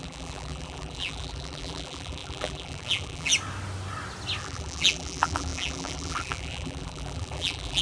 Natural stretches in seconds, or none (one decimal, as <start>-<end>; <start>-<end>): 3.3-4.4